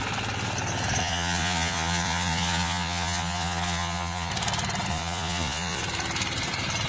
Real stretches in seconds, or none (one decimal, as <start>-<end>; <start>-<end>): 0.0-1.0; 4.3-4.9; 5.8-6.9

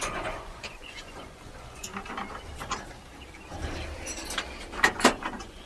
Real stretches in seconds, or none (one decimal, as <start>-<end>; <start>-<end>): 1.9-5.3

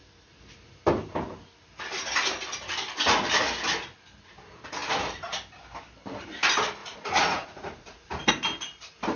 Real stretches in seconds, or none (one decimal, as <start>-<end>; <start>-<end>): 0.0-6.8; 8.3-9.2

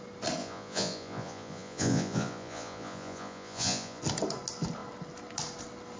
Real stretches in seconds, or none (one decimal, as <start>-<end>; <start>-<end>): 0.0-0.4; 4.0-6.0